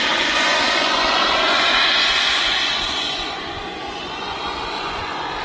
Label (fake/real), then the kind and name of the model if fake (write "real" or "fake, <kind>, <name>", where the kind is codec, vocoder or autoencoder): fake, vocoder, Vocos